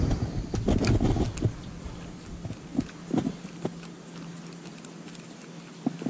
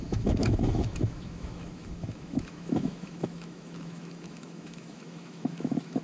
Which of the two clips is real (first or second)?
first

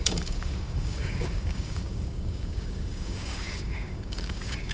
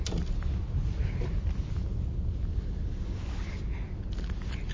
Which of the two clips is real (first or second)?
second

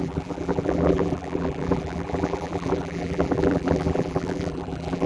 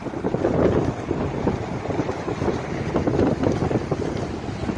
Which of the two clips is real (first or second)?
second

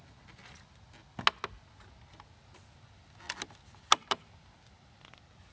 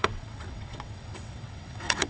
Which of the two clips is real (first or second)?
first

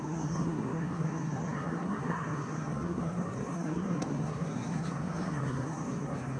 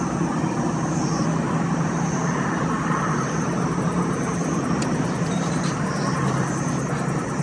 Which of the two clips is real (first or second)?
second